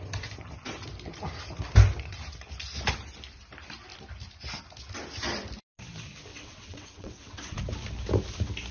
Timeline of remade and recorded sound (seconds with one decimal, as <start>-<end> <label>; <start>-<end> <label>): 0.0-6.3 recorded; 6.3-7.6 remade; 7.6-8.7 recorded